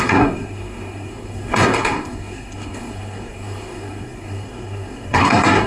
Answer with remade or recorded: remade